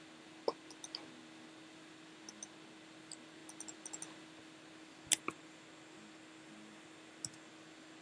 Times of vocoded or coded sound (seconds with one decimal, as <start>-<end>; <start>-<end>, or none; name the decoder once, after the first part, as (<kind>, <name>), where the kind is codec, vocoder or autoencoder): none